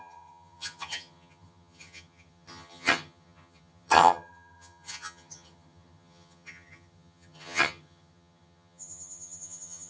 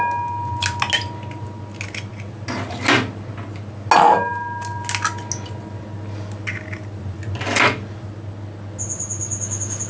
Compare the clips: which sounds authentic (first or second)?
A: second